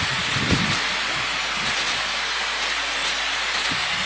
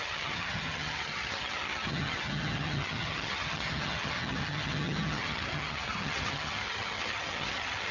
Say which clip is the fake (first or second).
second